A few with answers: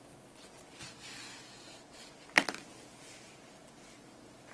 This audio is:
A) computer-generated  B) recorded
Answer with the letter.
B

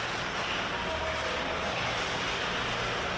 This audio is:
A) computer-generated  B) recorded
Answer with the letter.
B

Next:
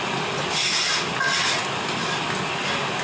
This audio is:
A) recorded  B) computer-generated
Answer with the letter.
A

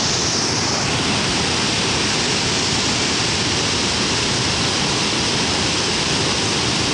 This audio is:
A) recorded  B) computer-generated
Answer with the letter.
A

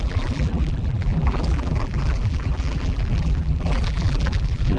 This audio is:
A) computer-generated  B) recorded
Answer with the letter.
A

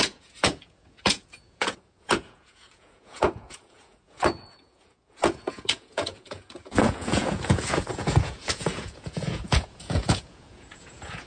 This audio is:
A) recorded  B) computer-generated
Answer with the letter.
B